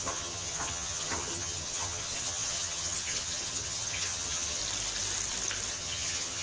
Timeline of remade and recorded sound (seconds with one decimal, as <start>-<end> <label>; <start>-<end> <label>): 0.0-4.6 remade; 4.6-5.7 recorded; 5.7-6.4 remade